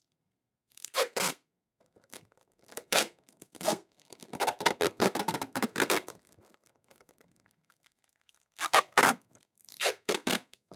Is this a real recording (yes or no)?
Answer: no